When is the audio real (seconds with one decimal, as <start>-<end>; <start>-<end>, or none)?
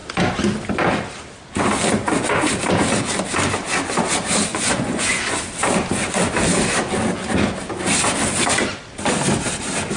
0.0-4.5; 5.4-10.0